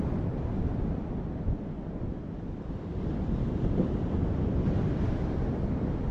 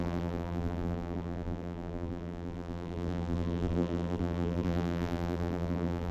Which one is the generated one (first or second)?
second